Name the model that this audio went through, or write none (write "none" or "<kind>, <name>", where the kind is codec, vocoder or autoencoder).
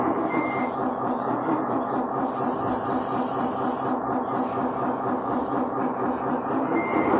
vocoder, BigVGAN v2